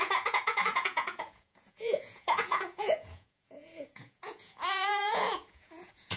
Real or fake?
fake